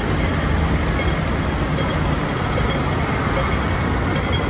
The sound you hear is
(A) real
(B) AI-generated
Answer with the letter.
A